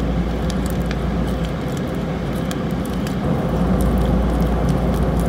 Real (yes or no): yes